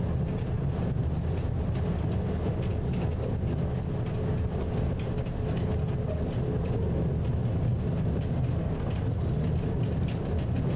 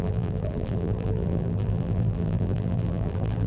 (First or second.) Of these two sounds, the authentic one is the first